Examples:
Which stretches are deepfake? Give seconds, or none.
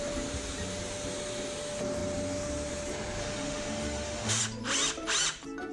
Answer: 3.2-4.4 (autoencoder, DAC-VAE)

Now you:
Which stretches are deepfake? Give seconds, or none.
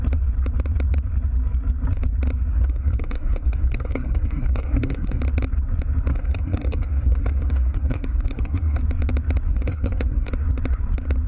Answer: 2.5-5.2 (codec, SNAC); 6.1-8.8; 9.5-10.3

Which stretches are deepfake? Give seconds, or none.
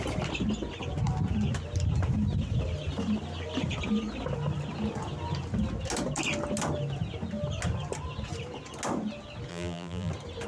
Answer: 9.5-10.1 (vocoder, BigVGAN v2)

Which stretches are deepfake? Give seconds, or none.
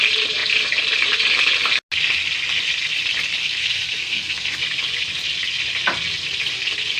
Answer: 3.4-4.6 (codec, SNAC)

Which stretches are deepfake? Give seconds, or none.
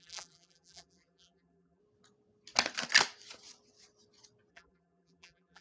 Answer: 0.0-1.8 (vocoder, BigVGAN v2); 4.5-5.6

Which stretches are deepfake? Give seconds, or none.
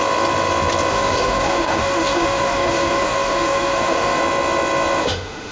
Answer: 0.9-4.2 (autoencoder, DAC-VAE); 5.0-5.5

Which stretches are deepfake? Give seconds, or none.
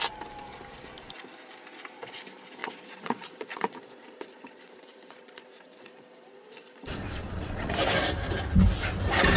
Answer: 2.6-7.7 (vocoder, Vocos)